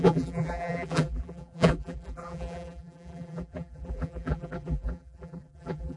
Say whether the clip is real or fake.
fake